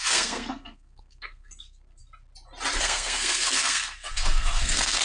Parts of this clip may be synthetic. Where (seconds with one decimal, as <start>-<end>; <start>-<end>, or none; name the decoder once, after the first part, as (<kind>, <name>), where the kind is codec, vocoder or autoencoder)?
0.0-2.0 (codec, SNAC); 2.8-5.0